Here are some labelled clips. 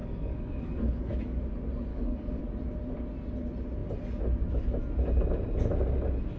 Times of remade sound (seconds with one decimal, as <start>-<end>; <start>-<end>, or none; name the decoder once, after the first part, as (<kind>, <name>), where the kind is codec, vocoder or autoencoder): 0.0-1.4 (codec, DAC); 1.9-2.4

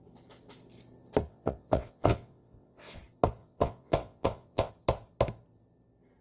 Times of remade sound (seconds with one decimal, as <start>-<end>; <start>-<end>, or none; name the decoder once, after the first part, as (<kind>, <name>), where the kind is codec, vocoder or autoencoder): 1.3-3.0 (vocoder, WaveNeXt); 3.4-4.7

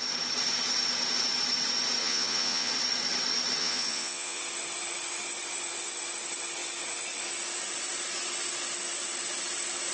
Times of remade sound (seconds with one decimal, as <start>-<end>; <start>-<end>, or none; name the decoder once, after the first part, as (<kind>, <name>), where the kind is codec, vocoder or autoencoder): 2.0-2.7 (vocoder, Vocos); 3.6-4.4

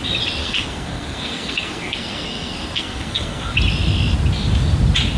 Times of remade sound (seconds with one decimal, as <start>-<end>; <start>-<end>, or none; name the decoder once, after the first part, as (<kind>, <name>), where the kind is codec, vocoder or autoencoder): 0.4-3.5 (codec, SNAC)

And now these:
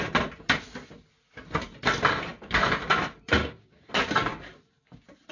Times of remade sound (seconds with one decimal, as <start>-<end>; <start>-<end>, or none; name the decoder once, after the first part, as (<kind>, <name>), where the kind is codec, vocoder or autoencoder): 3.4-3.9 (codec, DAC)